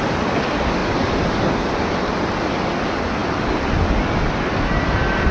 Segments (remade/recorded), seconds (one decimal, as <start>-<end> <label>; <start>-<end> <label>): 0.0-5.3 recorded